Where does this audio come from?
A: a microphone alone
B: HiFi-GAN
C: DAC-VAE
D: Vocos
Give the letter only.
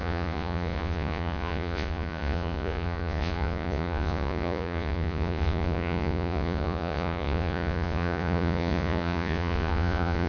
D